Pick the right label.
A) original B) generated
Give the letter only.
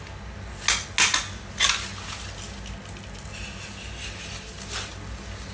A